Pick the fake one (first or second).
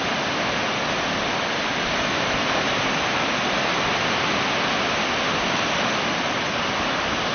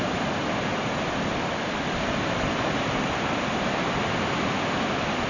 second